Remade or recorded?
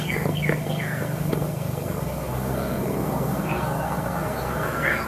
remade